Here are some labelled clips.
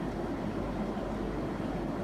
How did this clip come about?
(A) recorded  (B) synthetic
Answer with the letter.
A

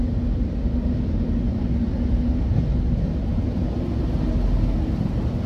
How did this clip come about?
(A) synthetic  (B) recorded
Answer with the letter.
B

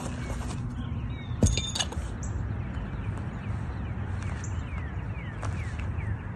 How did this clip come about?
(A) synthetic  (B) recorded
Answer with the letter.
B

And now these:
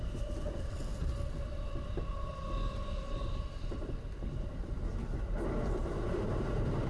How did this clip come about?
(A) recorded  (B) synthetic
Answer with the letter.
A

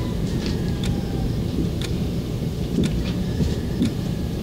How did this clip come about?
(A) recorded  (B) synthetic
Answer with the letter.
B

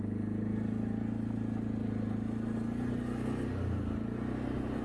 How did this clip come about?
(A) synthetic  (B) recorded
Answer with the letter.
B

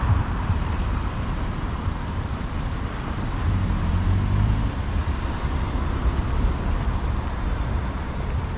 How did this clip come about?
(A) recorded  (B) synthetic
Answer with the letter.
B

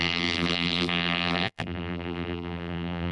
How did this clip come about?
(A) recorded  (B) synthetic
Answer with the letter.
B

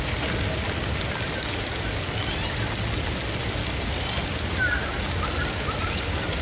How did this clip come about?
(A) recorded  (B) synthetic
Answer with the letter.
A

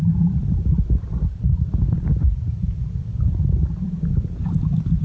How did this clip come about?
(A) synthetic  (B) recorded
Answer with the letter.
A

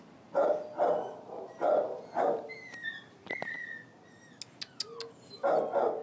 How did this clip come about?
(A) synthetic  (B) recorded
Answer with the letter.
B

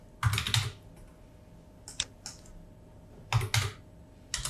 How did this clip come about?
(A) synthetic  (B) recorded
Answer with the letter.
B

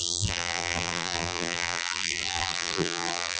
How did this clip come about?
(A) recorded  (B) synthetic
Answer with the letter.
B